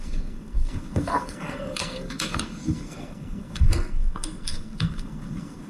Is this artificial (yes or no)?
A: yes